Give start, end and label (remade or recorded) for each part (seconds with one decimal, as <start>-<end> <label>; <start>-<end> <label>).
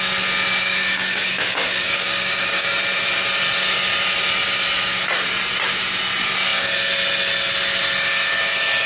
0.0-0.6 recorded; 0.6-2.8 remade; 2.8-8.9 recorded